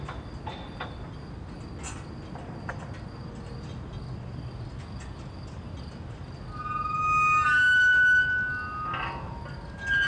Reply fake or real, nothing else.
real